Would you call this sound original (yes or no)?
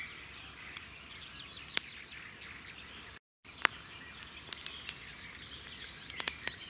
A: yes